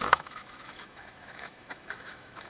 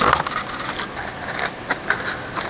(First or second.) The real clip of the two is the second